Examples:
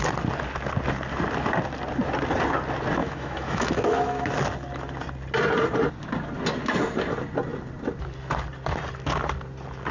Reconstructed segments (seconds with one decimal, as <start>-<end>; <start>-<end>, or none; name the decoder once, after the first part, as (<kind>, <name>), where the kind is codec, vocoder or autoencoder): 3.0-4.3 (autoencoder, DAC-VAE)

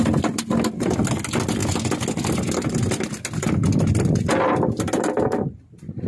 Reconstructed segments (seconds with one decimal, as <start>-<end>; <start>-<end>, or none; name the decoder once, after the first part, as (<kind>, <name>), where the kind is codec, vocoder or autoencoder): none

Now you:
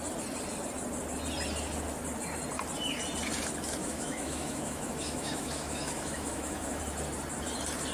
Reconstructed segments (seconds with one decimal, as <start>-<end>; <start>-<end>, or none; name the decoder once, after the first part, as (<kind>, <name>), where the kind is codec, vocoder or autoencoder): 3.8-6.8 (autoencoder, DAC-VAE)